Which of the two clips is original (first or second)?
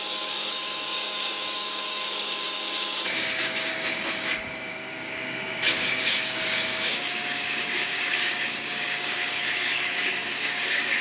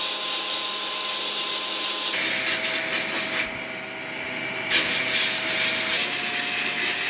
second